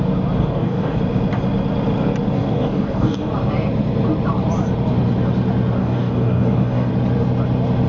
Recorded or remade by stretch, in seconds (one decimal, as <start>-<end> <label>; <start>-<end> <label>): 0.0-0.4 recorded; 0.4-1.0 remade; 1.0-2.4 recorded; 2.4-3.3 remade; 3.3-5.8 recorded; 5.8-6.9 remade; 6.9-7.9 recorded

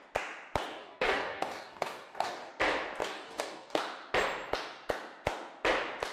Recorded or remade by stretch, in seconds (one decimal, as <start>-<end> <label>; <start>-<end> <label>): 0.0-0.7 recorded; 0.7-2.5 remade; 2.5-3.0 recorded; 3.0-3.8 remade; 3.8-6.1 recorded

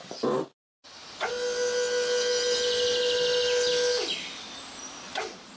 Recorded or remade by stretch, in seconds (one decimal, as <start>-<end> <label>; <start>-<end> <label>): 0.0-5.6 recorded

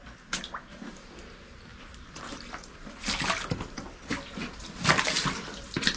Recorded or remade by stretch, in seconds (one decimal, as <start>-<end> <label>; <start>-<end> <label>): 0.0-1.7 recorded; 1.7-4.0 remade; 4.0-6.0 recorded

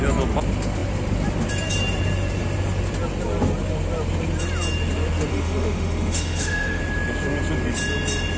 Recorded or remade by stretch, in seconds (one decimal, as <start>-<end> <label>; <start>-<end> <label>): 0.0-5.3 recorded; 5.3-6.8 remade; 6.8-8.4 recorded

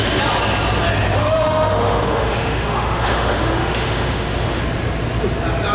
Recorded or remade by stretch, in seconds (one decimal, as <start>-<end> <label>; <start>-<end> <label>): 0.0-1.2 recorded; 1.2-4.6 remade; 4.6-5.7 recorded